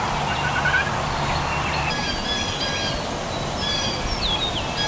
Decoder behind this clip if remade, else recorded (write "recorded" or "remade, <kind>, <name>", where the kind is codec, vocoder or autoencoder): recorded